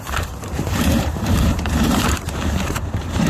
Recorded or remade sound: remade